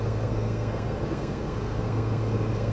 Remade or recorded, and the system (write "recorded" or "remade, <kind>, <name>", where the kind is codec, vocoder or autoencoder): remade, codec, SNAC